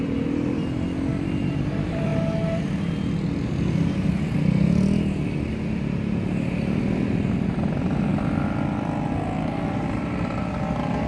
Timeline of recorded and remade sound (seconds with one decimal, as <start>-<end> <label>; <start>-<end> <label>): 0.0-2.1 remade; 2.1-7.3 recorded; 7.3-8.1 remade; 8.1-9.1 recorded; 9.1-11.1 remade